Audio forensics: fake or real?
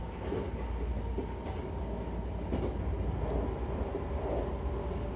real